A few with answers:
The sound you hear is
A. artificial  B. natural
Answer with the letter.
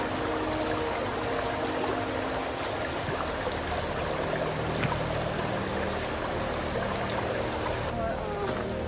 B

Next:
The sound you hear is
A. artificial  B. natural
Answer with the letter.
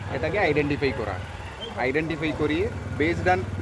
B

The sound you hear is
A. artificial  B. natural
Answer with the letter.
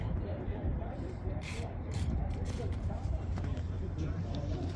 A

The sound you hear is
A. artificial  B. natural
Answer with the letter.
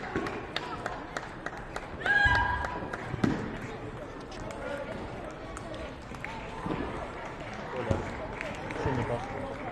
B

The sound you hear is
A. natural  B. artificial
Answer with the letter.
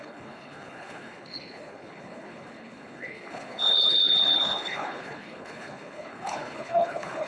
B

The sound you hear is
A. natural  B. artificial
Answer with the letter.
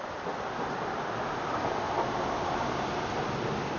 A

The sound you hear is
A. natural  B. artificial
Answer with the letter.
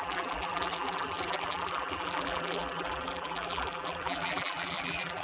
B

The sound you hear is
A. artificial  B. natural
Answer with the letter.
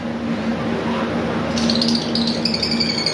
B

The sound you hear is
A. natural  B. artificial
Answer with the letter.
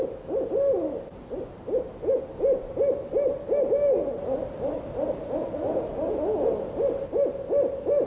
A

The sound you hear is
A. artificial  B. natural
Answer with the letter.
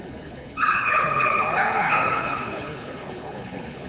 A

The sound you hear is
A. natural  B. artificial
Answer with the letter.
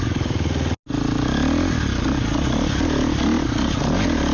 A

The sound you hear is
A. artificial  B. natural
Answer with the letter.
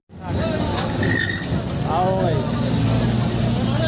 B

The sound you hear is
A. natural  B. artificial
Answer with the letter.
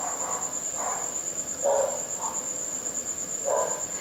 A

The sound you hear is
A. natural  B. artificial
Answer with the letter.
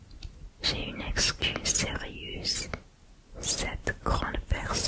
A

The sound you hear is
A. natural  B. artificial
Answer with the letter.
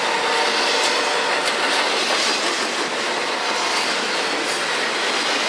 A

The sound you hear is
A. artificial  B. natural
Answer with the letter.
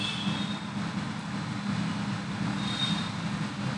B